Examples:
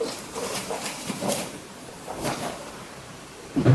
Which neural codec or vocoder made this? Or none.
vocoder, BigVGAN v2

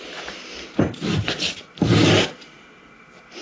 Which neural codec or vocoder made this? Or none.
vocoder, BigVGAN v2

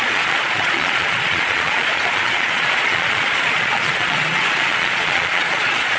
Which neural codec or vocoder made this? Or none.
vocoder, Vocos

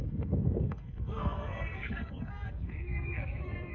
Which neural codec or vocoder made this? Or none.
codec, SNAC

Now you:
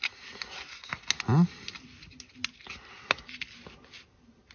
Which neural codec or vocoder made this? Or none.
none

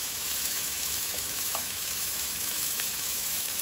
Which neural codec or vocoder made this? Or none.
autoencoder, DAC-VAE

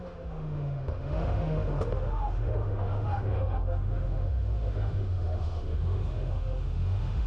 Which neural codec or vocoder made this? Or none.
autoencoder, DAC-VAE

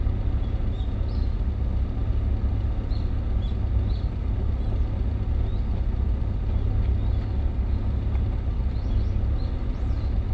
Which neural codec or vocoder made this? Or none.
none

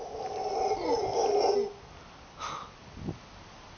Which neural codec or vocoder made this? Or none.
none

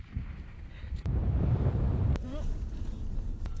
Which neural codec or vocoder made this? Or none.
vocoder, BigVGAN v2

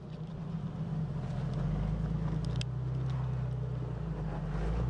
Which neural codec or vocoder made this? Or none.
none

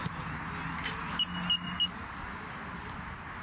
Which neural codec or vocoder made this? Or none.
none